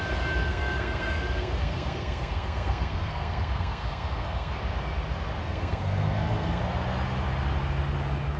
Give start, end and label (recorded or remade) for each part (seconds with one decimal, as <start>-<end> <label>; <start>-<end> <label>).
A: 0.0-0.5 recorded; 0.5-4.5 remade; 4.5-5.4 recorded; 5.4-6.6 remade; 6.6-8.4 recorded